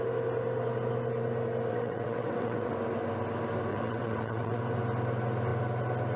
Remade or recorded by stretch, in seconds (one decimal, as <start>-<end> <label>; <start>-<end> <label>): 0.0-1.7 recorded; 1.7-2.7 remade; 2.7-3.7 recorded; 3.7-4.6 remade; 4.6-6.2 recorded